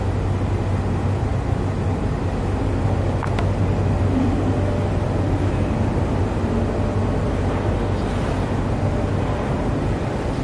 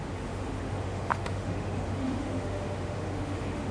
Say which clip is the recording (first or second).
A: first